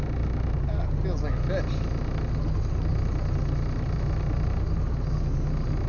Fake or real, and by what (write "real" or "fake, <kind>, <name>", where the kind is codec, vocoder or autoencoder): real